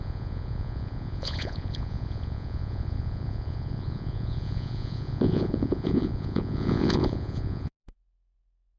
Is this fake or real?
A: fake